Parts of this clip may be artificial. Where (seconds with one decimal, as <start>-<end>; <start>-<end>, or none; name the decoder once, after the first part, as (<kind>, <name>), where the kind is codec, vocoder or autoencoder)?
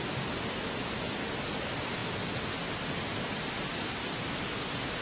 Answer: none